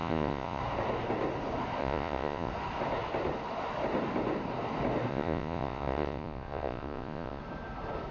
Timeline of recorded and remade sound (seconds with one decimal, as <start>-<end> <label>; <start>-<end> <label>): 0.0-0.6 remade; 0.6-1.8 recorded; 1.8-2.5 remade; 2.5-5.1 recorded; 5.1-7.4 remade; 7.4-8.1 recorded

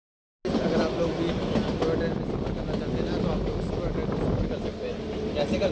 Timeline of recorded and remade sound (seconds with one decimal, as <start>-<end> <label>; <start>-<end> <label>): 0.0-5.7 recorded

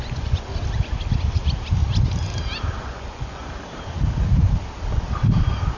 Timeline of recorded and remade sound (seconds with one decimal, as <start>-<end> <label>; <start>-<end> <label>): 0.0-0.5 remade; 0.5-2.8 recorded; 2.8-3.4 remade; 3.4-5.8 recorded

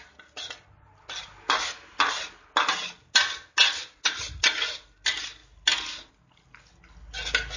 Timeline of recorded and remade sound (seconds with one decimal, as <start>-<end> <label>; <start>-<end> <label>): 0.0-7.6 recorded